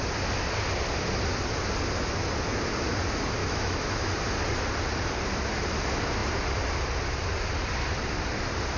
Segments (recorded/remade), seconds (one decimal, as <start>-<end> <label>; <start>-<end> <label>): 0.0-3.4 recorded; 3.4-4.1 remade; 4.1-8.8 recorded